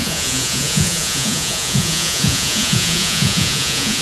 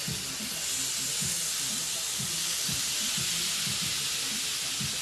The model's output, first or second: first